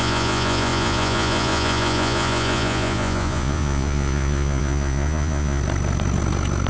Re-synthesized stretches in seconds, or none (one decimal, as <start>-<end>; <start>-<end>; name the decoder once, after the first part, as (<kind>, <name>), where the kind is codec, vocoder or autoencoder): 0.0-5.6 (vocoder, Vocos)